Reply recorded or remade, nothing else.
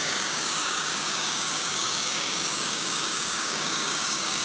remade